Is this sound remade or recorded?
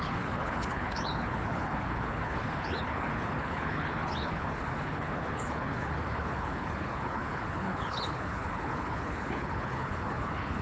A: remade